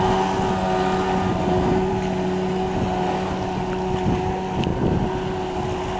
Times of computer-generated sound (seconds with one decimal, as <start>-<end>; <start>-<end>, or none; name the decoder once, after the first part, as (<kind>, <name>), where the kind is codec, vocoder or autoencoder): 1.3-1.9 (vocoder, BigVGAN v2); 4.7-5.4